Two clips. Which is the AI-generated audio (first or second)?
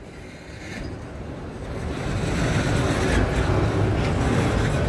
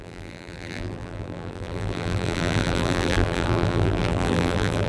second